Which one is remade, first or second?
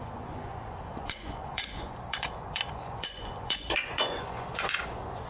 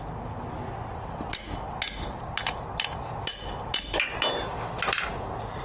first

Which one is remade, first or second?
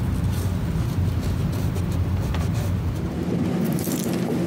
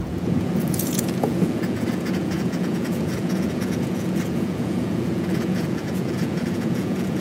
second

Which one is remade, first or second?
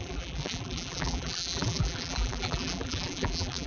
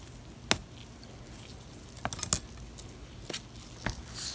first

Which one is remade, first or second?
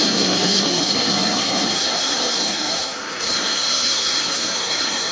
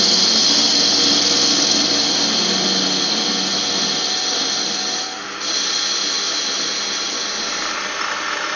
first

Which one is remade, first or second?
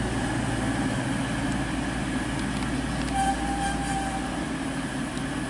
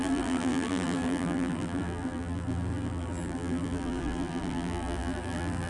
second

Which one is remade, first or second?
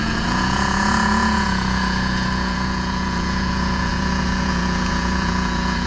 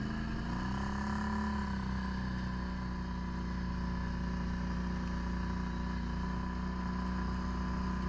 first